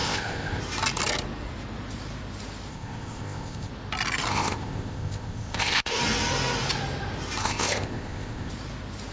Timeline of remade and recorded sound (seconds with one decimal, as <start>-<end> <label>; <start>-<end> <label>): 0.0-0.6 remade; 0.6-2.7 recorded; 2.7-3.7 remade; 3.7-4.3 recorded; 4.3-6.0 remade; 6.0-7.4 recorded; 7.4-8.5 remade; 8.5-9.1 recorded